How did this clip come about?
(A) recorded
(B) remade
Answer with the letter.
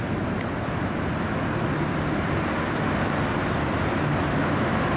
A